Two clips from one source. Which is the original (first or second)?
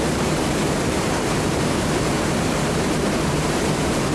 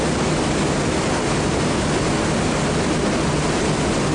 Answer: second